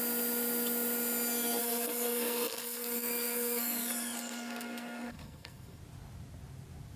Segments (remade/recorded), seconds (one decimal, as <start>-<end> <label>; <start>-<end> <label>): 0.0-1.6 recorded; 1.6-5.8 remade; 5.8-7.0 recorded